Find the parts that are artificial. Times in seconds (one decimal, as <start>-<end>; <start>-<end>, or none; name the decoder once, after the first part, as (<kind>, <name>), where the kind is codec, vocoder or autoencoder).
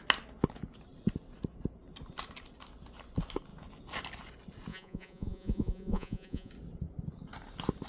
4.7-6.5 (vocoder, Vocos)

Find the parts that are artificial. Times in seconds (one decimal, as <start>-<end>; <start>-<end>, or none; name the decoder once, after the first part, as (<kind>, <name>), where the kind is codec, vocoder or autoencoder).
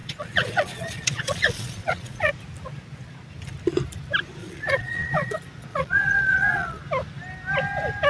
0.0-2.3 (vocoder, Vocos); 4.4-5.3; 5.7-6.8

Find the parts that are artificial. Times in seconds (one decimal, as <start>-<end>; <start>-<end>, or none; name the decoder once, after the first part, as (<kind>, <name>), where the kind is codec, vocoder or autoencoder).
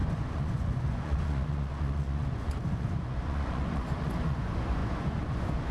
0.0-5.7 (vocoder, Vocos)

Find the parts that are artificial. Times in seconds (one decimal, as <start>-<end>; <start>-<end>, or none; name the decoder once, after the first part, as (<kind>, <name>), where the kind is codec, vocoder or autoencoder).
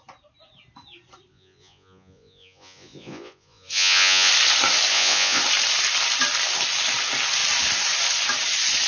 1.3-4.3 (vocoder, Vocos); 4.9-5.4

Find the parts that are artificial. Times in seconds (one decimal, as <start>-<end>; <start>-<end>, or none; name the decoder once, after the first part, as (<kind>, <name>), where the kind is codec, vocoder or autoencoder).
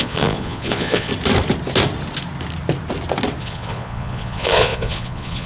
0.0-1.1 (vocoder, Vocos); 3.4-5.5